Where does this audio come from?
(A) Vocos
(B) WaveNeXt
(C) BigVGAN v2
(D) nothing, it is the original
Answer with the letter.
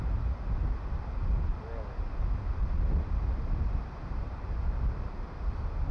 D